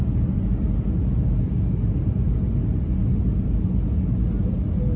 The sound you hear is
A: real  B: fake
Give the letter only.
A